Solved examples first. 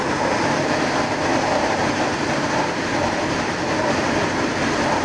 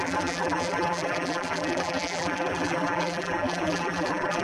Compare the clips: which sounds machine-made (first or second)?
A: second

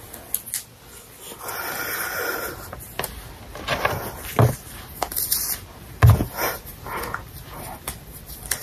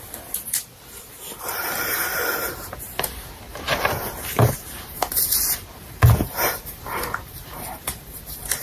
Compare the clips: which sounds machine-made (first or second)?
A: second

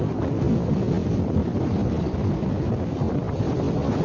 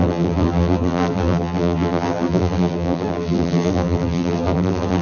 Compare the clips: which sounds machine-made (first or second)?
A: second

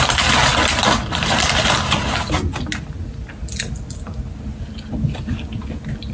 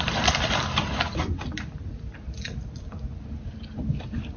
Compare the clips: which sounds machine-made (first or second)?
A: second